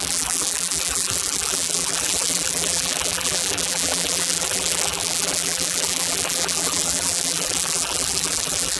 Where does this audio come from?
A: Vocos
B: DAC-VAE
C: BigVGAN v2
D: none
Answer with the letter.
C